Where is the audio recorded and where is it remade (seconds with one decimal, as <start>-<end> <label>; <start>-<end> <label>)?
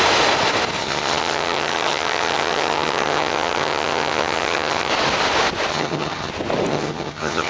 0.0-0.8 recorded; 0.8-4.9 remade; 4.9-5.7 recorded; 5.7-6.3 remade; 6.3-6.7 recorded; 6.7-7.5 remade